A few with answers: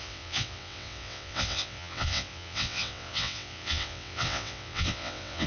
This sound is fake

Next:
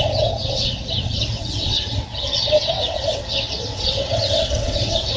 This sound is fake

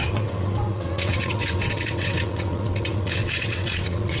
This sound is fake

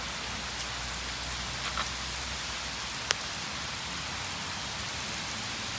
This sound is real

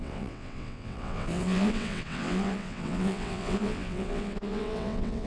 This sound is fake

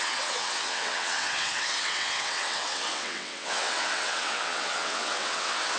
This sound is fake